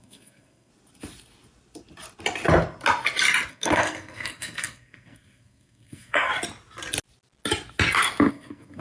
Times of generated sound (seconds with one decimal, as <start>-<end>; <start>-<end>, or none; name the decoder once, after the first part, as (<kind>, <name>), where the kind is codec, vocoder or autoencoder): 0.0-0.7 (codec, SNAC); 3.5-6.3; 8.3-8.8